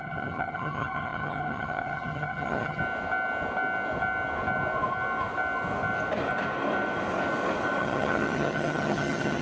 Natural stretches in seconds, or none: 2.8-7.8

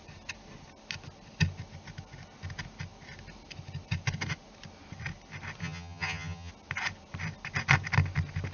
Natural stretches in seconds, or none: 0.0-5.6; 6.5-8.5

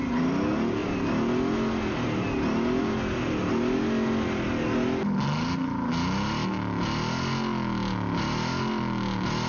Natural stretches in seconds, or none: 0.0-9.5